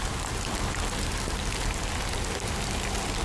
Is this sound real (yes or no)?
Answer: yes